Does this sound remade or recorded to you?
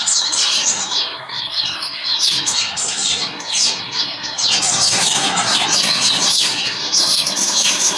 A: remade